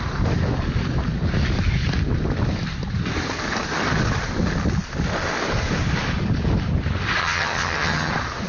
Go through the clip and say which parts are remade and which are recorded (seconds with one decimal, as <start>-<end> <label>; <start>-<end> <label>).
0.0-7.2 recorded; 7.2-8.1 remade; 8.1-8.5 recorded